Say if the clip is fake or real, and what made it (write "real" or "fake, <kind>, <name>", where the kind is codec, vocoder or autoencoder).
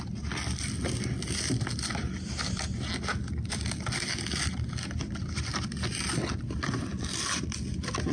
real